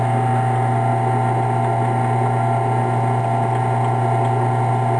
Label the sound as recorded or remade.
recorded